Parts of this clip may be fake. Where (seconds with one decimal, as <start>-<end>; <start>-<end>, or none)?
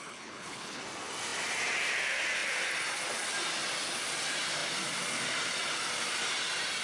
0.0-0.8